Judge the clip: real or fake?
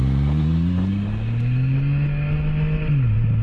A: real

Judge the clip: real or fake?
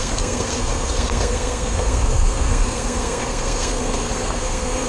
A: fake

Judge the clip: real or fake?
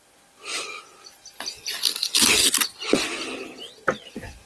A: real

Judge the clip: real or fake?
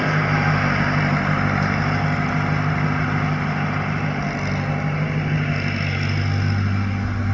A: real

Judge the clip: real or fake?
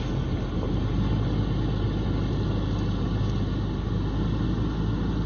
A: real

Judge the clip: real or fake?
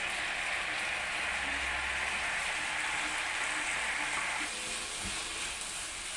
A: real